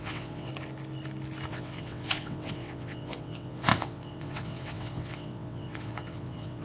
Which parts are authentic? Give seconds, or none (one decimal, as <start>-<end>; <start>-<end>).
0.5-1.5